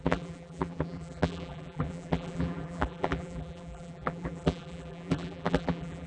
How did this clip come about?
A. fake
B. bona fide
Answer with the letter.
A